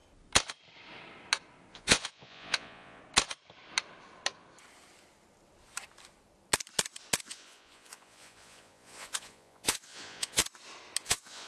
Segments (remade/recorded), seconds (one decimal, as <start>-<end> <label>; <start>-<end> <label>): 0.0-1.7 recorded; 1.7-3.0 remade; 3.0-7.2 recorded; 7.2-10.4 remade; 10.4-11.0 recorded; 11.0-11.5 remade